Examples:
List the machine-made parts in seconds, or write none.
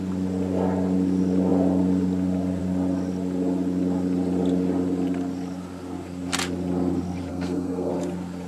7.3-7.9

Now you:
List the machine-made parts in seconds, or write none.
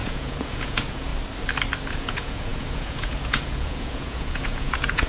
0.0-1.1; 1.9-5.1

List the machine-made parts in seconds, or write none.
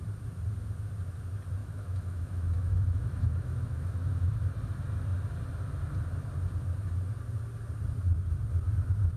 1.6-4.4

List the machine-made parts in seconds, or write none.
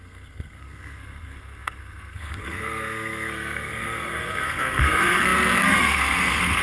0.0-6.6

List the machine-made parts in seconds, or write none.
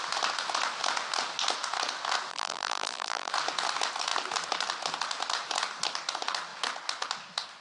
2.3-3.3